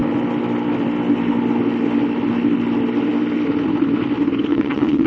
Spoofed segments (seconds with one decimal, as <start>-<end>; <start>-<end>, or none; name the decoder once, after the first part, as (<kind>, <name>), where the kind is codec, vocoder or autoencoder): 4.5-5.1 (vocoder, WaveNeXt)